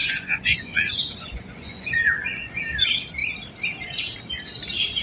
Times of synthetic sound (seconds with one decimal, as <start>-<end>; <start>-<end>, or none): 0.0-2.6